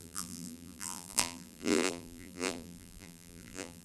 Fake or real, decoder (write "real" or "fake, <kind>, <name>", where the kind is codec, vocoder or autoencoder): fake, vocoder, BigVGAN v2